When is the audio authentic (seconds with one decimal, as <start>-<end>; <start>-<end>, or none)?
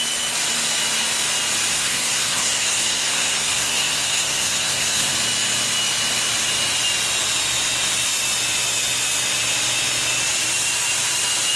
0.0-1.7; 5.1-11.6